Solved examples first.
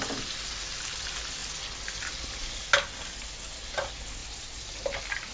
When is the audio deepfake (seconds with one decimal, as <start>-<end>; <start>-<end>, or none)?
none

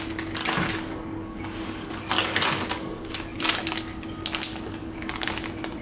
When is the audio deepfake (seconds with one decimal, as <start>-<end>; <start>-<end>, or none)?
0.4-3.4; 4.5-5.3

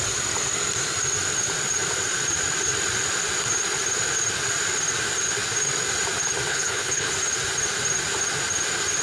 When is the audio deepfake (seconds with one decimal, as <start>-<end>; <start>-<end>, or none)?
6.5-7.1